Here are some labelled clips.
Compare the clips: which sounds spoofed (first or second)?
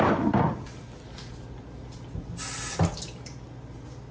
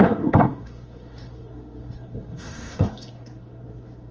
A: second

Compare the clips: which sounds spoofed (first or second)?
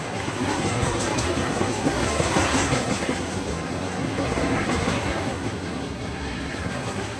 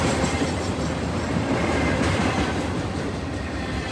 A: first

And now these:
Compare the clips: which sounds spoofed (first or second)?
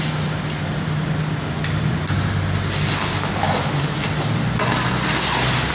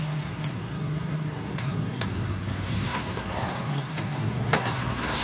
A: second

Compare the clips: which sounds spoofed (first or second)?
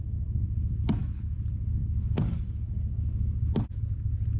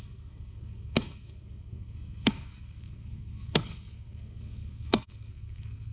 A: second